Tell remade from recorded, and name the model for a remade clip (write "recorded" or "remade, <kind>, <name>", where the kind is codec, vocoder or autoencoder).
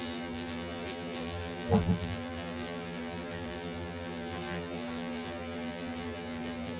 remade, vocoder, BigVGAN v2